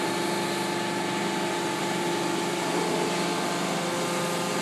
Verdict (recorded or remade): recorded